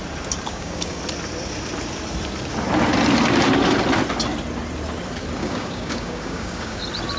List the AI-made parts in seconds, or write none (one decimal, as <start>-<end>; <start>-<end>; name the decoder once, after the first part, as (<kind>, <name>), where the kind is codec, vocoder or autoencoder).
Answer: 0.5-1.0 (codec, DAC); 5.4-6.8